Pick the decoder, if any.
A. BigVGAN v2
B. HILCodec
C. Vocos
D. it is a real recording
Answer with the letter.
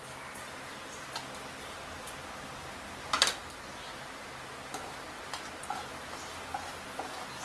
D